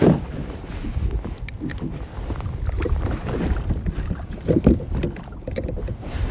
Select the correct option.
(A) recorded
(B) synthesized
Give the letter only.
A